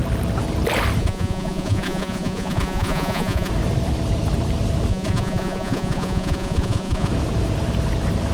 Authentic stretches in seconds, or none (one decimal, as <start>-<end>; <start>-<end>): 0.0-1.0; 3.5-4.9; 7.1-8.3